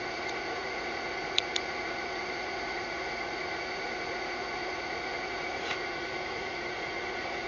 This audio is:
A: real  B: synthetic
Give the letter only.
B